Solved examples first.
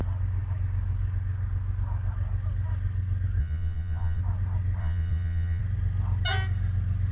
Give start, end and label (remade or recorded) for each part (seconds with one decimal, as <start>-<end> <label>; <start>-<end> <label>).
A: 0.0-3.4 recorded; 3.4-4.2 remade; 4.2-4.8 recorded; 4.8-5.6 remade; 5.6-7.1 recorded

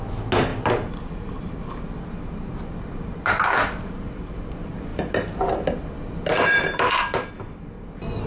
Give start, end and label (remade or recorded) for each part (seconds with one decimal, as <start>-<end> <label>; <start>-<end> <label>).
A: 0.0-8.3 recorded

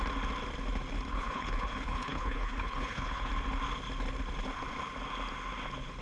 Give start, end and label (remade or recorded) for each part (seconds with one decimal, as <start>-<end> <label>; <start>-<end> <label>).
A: 0.0-1.1 recorded; 1.1-3.3 remade; 3.3-6.0 recorded